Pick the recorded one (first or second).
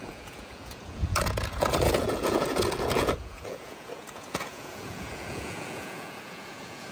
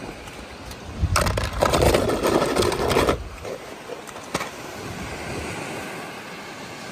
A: second